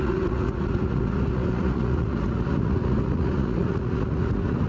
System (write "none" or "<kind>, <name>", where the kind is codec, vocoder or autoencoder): vocoder, Vocos